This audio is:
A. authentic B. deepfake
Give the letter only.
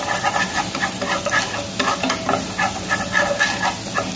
A